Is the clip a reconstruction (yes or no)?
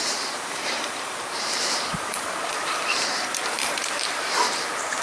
yes